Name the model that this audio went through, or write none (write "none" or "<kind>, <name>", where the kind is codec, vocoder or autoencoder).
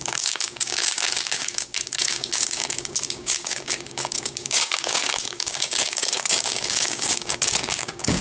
codec, DAC